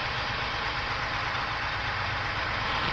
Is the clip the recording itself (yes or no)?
yes